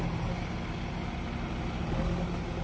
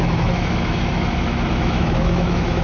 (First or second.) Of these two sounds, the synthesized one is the second